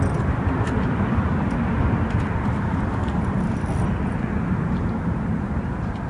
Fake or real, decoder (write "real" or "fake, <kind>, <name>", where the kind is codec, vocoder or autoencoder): real